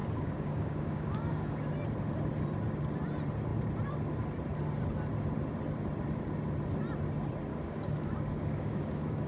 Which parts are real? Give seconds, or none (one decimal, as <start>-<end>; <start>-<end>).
1.7-7.5